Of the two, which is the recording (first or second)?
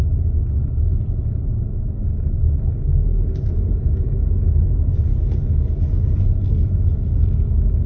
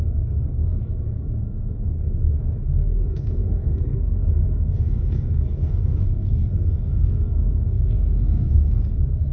first